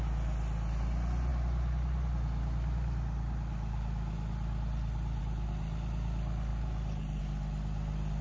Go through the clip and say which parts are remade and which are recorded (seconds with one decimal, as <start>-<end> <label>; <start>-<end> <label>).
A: 0.0-8.2 recorded